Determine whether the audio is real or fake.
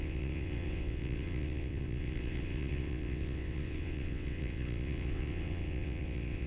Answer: fake